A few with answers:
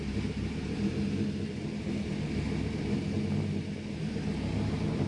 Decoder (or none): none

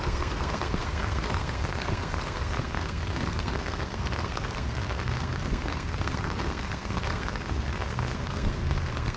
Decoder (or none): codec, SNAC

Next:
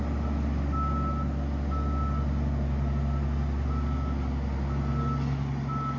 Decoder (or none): none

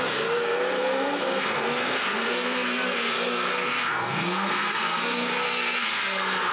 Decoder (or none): codec, SNAC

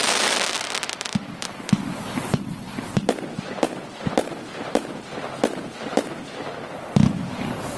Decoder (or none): none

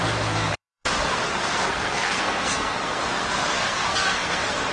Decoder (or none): codec, SNAC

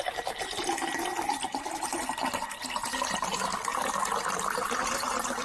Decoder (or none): none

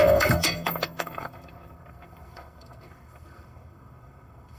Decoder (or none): codec, SNAC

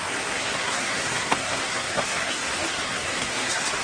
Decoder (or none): codec, SNAC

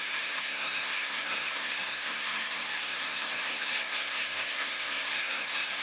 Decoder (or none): codec, SNAC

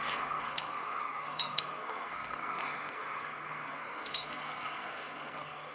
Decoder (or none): codec, SNAC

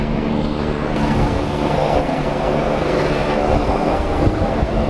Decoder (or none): codec, SNAC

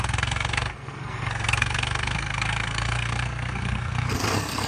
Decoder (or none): codec, SNAC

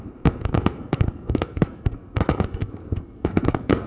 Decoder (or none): codec, SNAC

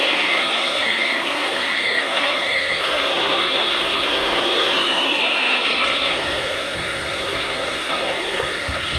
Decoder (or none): codec, SNAC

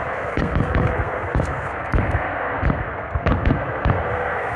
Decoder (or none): codec, SNAC